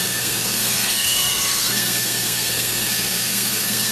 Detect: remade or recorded remade